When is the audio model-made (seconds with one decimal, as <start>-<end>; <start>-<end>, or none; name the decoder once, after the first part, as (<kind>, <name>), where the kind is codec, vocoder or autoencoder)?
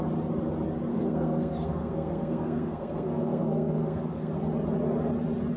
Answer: 0.9-4.3 (codec, SNAC)